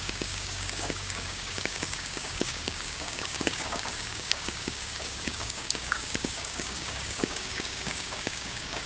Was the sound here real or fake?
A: fake